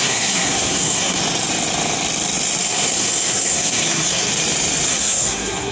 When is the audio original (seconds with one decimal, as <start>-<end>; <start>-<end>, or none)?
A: 1.2-2.6; 4.3-4.9